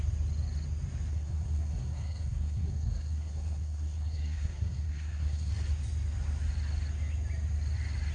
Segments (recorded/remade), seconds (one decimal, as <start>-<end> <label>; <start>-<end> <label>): 0.0-1.1 recorded; 1.1-5.5 remade; 5.5-8.1 recorded